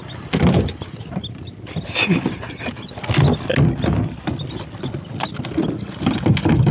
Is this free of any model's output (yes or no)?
yes